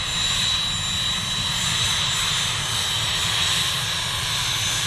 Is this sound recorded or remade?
recorded